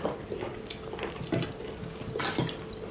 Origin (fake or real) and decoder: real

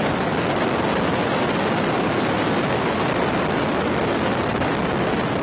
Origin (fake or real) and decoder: real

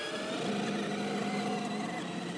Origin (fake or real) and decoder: real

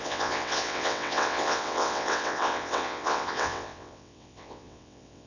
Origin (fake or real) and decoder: fake, vocoder, WaveNeXt